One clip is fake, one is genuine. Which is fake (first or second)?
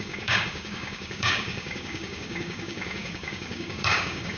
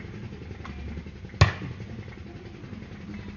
first